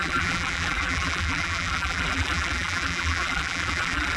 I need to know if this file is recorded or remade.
remade